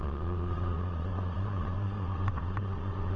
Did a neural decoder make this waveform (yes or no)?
yes